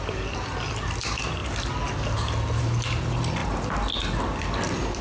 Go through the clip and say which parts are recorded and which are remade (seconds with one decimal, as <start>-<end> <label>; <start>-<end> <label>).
0.0-5.0 recorded